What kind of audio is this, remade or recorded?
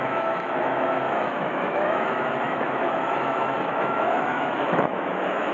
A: remade